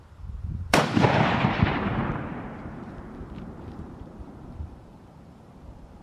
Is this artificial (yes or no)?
yes